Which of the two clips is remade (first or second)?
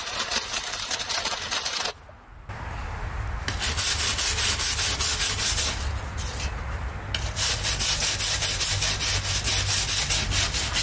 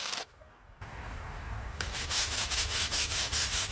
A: second